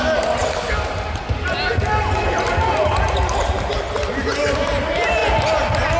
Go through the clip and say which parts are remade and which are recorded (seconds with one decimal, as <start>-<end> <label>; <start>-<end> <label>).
0.0-6.0 recorded